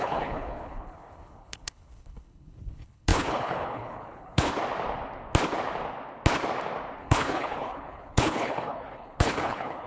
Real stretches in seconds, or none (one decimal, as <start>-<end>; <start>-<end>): 4.5-7.0